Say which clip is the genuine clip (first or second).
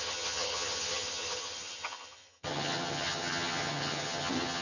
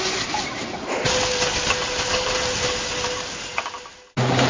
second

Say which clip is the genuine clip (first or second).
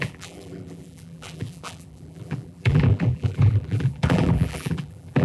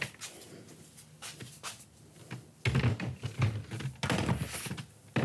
second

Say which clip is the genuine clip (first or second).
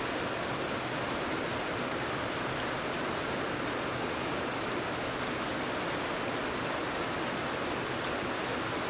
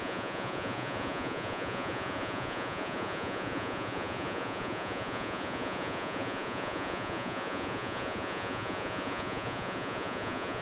first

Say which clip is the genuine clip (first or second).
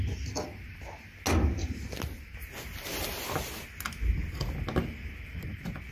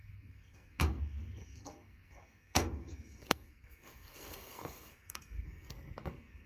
first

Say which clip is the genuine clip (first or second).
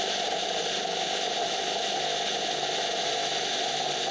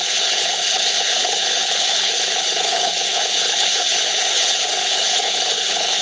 first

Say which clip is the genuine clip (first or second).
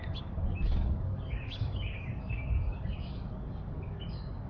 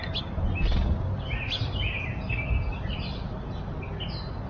second